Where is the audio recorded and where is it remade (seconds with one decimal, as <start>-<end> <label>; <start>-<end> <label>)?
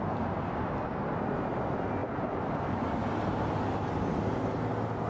0.0-5.1 recorded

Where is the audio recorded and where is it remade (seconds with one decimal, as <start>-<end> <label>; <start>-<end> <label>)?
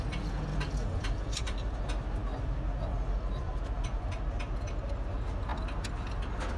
0.0-0.5 recorded; 0.5-1.8 remade; 1.8-2.9 recorded; 2.9-4.0 remade; 4.0-6.6 recorded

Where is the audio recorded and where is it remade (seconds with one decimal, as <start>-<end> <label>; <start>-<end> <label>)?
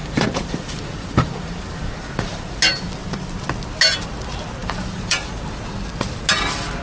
0.0-2.6 remade; 2.6-4.6 recorded; 4.6-5.6 remade; 5.6-6.8 recorded